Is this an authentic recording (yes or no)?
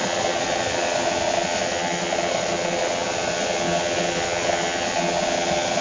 no